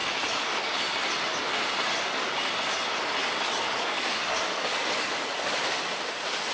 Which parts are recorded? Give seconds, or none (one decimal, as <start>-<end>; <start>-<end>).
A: 0.8-1.9; 2.5-3.2; 5.6-6.5